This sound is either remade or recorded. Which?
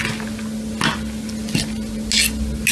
recorded